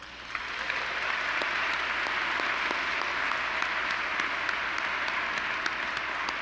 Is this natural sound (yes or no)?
yes